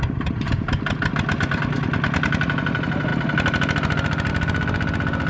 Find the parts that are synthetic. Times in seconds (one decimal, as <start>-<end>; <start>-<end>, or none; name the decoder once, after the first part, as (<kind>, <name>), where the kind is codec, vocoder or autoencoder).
none